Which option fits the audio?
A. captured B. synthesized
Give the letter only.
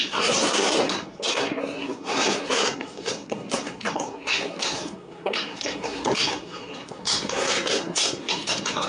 B